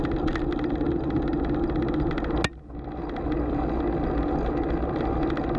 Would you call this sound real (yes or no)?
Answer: yes